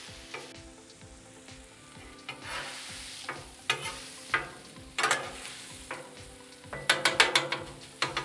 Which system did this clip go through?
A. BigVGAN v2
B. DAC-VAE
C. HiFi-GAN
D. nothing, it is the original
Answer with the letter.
D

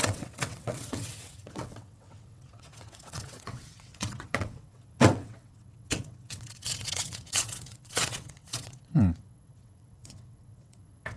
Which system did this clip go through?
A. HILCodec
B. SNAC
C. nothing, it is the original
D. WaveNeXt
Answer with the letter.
D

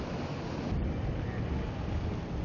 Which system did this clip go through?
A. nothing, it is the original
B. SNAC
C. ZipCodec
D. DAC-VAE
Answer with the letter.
A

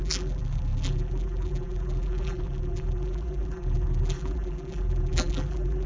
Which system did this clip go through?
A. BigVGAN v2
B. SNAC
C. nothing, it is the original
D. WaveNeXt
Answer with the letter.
A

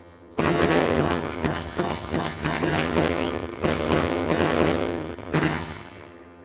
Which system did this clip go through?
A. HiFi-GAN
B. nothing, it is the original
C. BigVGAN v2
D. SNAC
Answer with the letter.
A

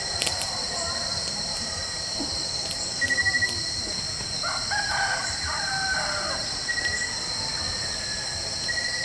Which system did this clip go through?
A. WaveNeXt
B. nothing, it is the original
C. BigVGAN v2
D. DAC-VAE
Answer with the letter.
B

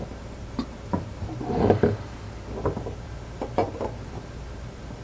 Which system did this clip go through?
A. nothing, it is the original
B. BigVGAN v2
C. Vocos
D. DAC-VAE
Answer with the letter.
B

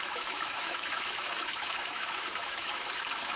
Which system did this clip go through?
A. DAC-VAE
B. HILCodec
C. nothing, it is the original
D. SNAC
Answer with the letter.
A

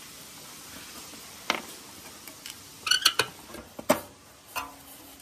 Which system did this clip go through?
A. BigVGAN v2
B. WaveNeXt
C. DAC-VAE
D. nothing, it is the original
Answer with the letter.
D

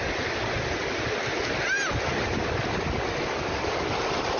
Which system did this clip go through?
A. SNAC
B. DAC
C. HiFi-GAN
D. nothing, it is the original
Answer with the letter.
D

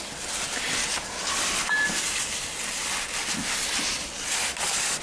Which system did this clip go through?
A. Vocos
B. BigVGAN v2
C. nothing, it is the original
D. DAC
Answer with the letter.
C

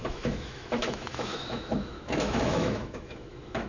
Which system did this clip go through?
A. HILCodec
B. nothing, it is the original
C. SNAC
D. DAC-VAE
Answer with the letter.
D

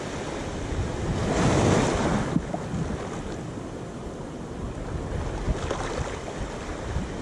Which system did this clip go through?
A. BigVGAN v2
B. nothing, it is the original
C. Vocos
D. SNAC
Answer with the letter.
B